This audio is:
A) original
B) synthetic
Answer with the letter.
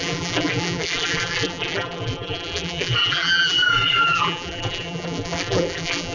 B